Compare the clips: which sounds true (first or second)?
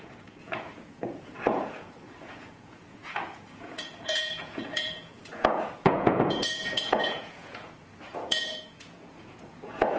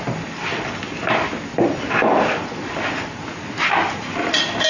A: second